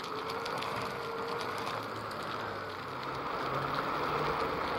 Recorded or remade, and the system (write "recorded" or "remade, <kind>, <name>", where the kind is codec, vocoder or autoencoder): recorded